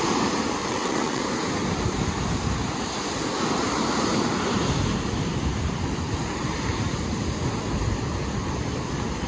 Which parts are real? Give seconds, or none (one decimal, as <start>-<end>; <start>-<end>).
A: 0.0-0.6; 1.2-9.3